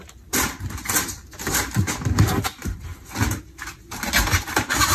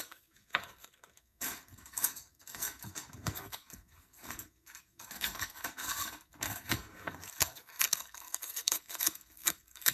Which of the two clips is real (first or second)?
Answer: first